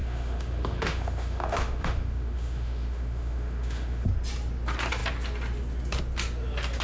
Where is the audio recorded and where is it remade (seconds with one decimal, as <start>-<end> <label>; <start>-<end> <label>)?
0.0-4.1 remade; 4.1-6.8 recorded